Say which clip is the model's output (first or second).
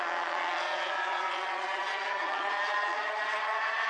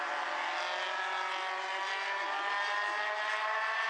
first